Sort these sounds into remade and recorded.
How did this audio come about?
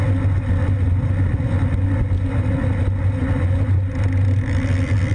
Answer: recorded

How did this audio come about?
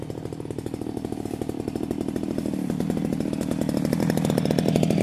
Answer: remade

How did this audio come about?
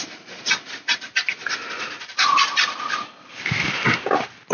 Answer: recorded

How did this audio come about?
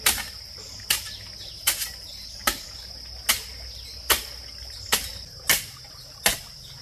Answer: recorded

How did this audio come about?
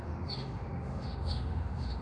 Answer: remade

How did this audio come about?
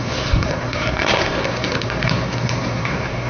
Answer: remade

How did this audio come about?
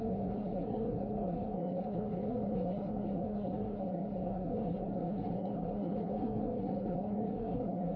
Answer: remade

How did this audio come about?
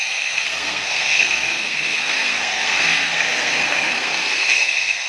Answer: remade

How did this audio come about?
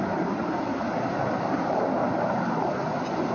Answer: remade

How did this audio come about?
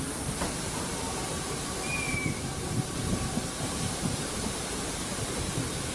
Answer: remade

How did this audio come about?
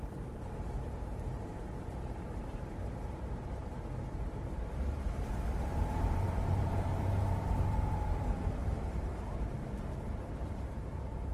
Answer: remade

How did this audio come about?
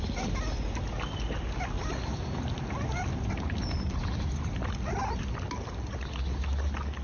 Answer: recorded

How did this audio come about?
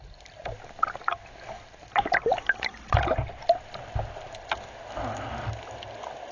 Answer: recorded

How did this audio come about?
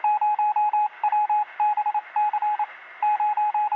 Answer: recorded